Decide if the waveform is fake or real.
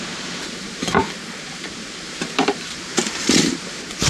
fake